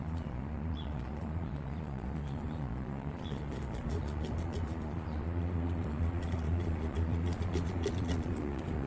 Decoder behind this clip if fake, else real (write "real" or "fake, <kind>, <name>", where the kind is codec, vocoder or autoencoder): fake, vocoder, Vocos